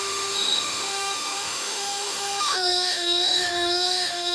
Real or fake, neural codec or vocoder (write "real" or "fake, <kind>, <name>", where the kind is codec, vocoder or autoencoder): fake, autoencoder, DAC-VAE